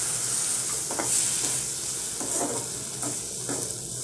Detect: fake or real real